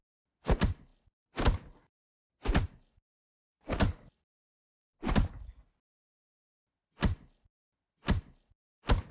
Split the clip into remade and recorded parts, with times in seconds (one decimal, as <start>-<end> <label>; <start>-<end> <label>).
0.0-9.1 recorded